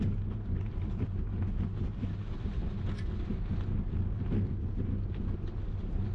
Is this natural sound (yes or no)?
yes